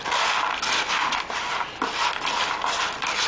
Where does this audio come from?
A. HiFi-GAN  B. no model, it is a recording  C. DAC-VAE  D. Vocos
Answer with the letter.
B